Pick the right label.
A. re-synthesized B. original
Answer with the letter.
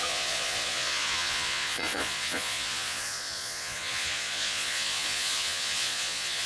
A